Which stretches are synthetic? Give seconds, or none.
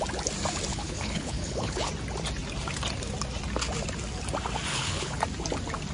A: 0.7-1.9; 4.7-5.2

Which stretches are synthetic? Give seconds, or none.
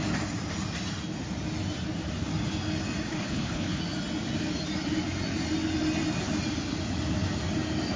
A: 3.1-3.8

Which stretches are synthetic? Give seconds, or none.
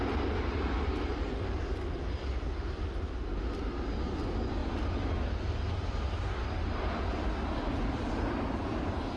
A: none